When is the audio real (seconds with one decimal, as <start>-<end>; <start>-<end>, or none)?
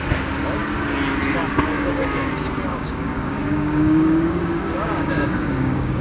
0.0-1.7; 2.3-2.7